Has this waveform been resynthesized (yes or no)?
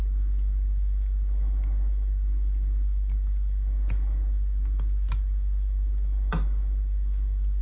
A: no